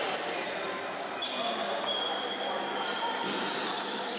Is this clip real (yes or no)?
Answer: yes